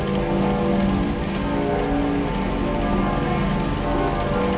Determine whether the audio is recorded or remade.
recorded